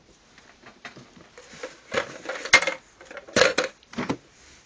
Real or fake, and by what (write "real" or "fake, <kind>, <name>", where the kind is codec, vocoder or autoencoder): real